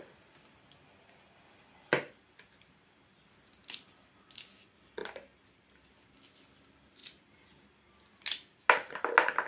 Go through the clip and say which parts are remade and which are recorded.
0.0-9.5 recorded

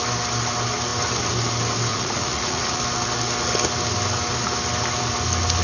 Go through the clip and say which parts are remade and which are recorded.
0.0-1.9 recorded; 1.9-2.8 remade; 2.8-5.6 recorded

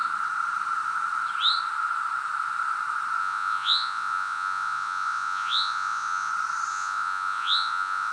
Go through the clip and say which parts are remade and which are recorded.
0.0-3.2 recorded; 3.2-6.3 remade; 6.3-6.7 recorded; 6.7-8.1 remade

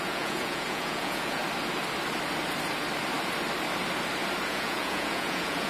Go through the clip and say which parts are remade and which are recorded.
0.0-1.4 remade; 1.4-4.4 recorded; 4.4-5.7 remade

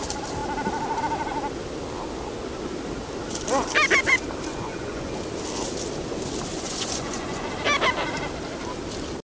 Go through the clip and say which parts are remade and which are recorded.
0.0-4.5 recorded; 4.5-5.1 remade; 5.1-6.5 recorded; 6.5-7.5 remade; 7.5-9.4 recorded

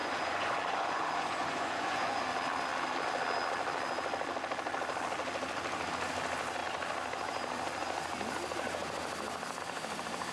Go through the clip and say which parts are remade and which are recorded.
0.0-2.2 remade; 2.2-10.3 recorded